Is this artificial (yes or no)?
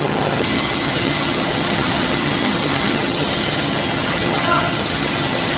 yes